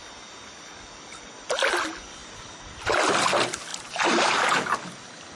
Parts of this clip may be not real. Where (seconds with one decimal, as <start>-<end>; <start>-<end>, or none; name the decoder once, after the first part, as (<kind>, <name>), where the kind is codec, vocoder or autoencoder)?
none